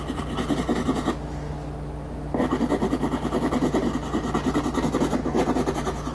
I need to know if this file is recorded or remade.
recorded